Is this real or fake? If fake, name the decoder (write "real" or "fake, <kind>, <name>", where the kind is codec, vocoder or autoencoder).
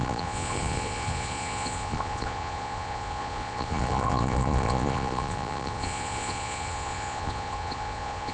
fake, vocoder, Vocos